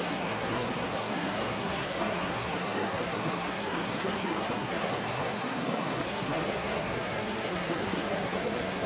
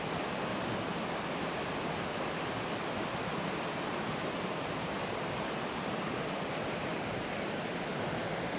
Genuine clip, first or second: second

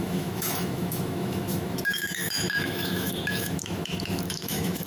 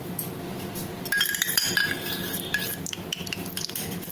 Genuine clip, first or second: second